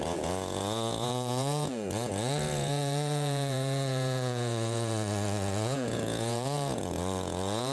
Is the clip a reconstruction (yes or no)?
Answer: yes